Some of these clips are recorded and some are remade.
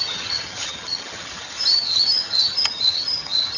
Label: remade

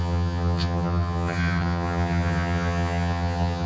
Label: remade